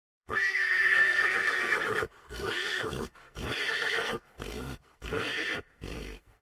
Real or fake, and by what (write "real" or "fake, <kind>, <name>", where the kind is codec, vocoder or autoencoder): fake, codec, SNAC